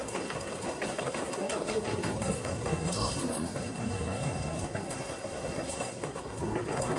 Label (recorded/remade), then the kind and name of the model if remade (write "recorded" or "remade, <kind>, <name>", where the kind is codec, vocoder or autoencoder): remade, codec, SNAC